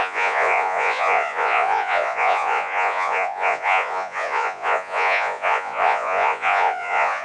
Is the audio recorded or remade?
remade